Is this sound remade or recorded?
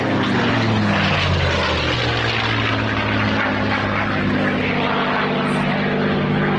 recorded